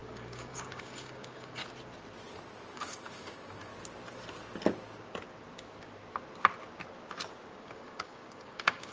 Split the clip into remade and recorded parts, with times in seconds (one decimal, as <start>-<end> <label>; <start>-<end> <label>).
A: 0.0-1.6 remade; 1.6-2.7 recorded; 2.7-3.7 remade; 3.7-7.5 recorded; 7.5-8.9 remade